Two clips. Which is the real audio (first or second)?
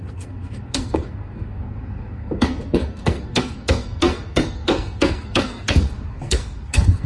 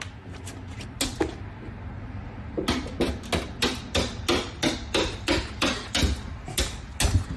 second